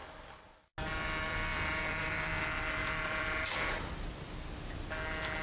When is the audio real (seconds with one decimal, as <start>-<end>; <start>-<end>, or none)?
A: 0.0-1.5; 2.3-2.8; 4.1-5.4